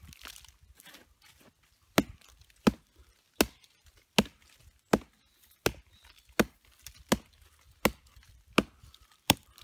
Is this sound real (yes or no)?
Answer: yes